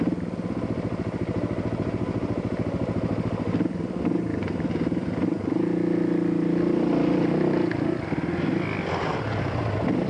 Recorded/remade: remade